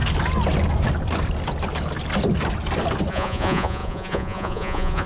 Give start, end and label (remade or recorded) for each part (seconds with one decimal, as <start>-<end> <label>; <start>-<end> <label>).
0.0-3.1 recorded; 3.1-5.1 remade